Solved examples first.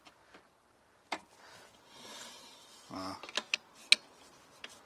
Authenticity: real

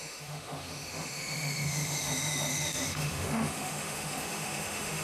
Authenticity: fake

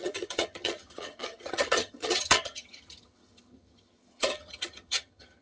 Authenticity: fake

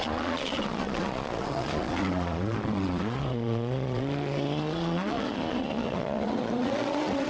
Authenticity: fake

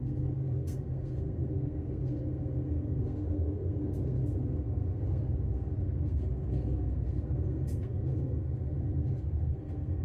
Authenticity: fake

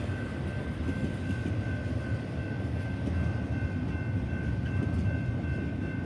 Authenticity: real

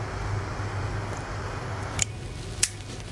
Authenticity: real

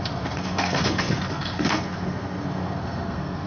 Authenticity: fake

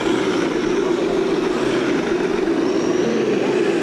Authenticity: real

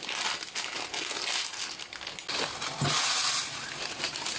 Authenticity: real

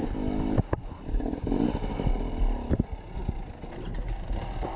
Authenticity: real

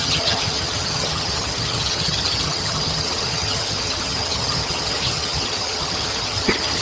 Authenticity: fake